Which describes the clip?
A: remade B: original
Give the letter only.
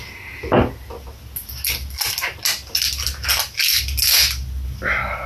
B